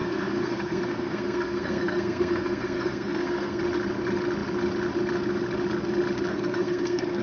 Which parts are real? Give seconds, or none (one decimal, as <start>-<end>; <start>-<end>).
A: 3.6-6.3